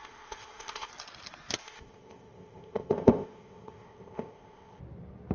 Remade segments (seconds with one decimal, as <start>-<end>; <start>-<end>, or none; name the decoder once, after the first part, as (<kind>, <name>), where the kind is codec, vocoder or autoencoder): 0.0-0.9 (codec, ZipCodec); 1.6-4.8